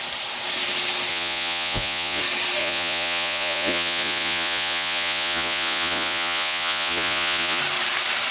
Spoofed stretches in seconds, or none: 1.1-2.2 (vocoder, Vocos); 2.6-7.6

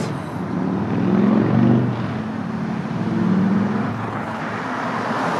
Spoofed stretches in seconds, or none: 3.9-4.4 (codec, HILCodec)

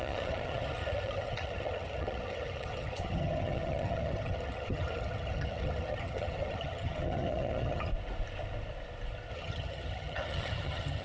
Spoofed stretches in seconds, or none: 0.0-7.9 (vocoder, HiFi-GAN); 9.3-11.0